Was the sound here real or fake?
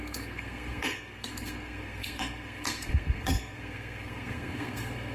fake